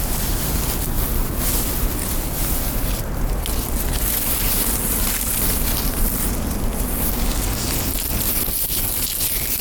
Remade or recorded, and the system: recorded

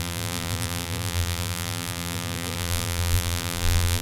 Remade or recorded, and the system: remade, vocoder, BigVGAN v2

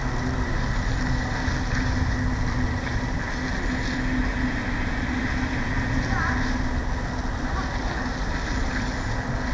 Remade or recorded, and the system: recorded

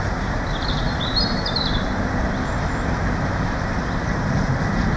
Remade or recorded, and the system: remade, vocoder, BigVGAN v2